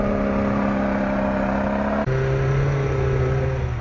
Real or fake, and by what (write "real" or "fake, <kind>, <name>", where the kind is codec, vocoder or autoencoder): real